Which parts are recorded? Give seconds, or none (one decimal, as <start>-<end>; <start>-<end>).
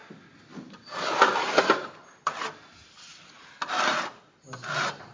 0.0-5.1